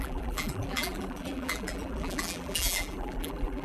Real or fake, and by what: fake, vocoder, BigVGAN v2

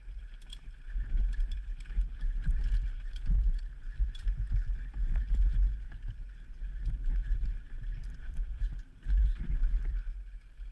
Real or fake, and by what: fake, vocoder, BigVGAN v2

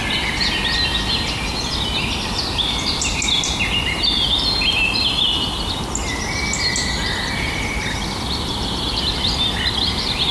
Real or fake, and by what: real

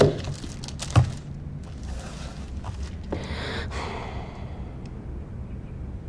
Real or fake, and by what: real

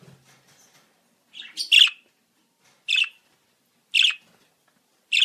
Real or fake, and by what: real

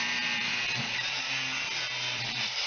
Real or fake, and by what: fake, vocoder, BigVGAN v2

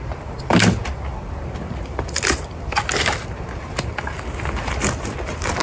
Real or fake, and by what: fake, vocoder, BigVGAN v2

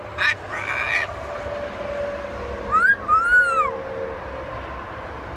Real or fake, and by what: real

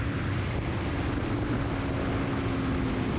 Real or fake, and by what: real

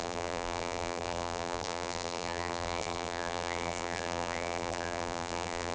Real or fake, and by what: fake, vocoder, BigVGAN v2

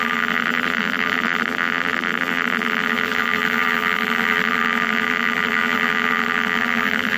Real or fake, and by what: fake, vocoder, BigVGAN v2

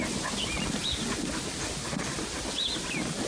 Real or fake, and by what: real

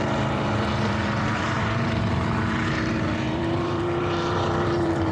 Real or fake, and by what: fake, vocoder, BigVGAN v2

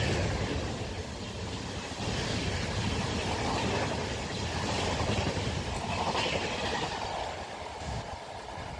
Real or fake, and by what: real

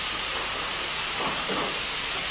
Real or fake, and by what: fake, vocoder, BigVGAN v2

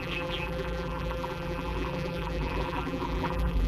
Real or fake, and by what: fake, vocoder, BigVGAN v2